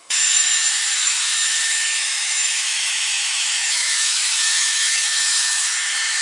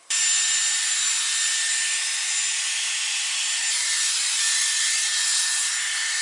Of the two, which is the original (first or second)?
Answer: second